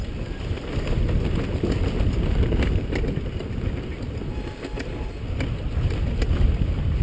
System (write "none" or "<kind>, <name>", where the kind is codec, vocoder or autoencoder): none